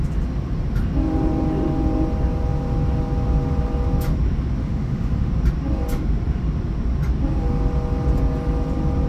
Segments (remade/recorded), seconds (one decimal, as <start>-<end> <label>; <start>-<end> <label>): 0.0-4.6 recorded; 4.6-5.3 remade; 5.3-9.1 recorded